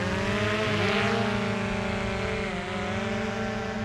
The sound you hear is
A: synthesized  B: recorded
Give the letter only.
B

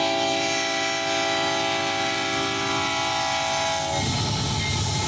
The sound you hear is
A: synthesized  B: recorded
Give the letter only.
B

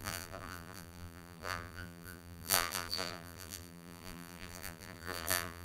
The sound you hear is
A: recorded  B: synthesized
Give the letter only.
B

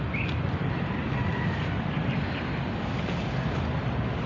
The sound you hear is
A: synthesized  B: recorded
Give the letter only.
A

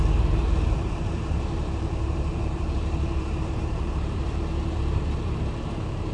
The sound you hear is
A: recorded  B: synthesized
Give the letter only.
B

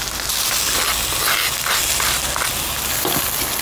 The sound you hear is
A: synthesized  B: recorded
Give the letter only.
B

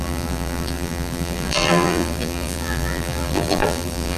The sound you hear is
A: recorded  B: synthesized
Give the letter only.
B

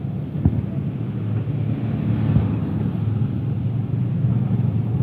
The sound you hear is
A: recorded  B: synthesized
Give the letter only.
A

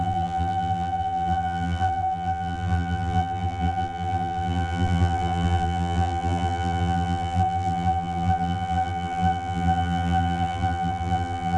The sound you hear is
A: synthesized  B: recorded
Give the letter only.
A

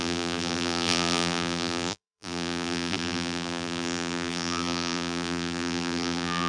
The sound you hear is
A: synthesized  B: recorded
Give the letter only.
A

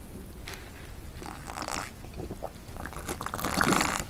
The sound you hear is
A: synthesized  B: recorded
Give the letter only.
B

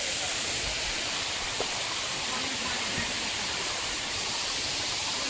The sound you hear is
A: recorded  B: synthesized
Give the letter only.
B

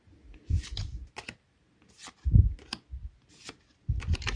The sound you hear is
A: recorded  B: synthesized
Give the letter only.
A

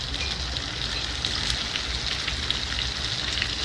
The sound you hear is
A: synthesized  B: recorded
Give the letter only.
B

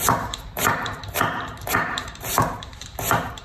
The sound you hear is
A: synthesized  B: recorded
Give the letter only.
A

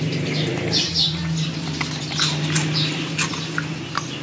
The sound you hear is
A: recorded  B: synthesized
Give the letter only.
A